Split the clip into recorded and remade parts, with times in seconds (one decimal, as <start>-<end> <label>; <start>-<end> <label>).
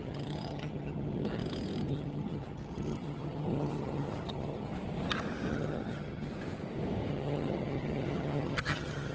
0.0-1.4 remade; 1.4-1.9 recorded; 1.9-4.7 remade; 4.7-5.5 recorded; 5.5-6.3 remade; 6.3-7.1 recorded; 7.1-9.1 remade